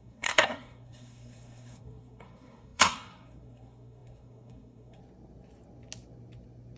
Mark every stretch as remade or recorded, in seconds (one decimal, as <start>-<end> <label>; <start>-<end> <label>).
0.0-5.0 remade; 5.0-6.8 recorded